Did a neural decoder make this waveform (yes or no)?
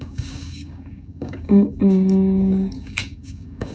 yes